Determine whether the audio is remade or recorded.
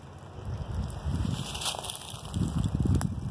recorded